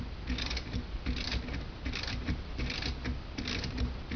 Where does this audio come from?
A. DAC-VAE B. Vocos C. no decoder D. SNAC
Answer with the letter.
C